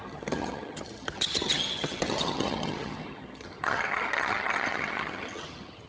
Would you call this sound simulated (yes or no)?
yes